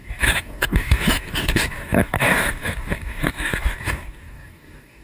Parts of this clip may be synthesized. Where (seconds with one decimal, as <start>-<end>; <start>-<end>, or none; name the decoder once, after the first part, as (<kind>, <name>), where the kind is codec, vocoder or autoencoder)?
0.0-5.0 (codec, DAC)